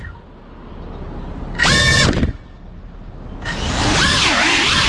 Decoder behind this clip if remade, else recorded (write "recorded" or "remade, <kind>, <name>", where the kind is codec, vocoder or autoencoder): recorded